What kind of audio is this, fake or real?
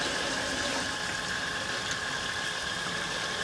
fake